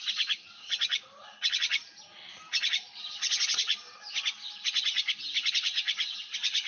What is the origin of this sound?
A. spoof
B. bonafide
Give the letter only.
B